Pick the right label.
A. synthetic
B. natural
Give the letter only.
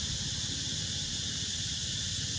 B